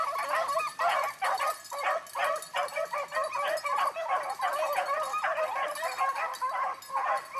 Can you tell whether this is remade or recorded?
recorded